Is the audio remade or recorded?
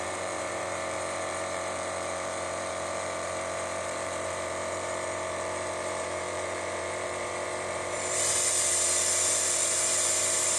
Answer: remade